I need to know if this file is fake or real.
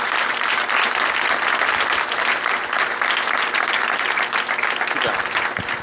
real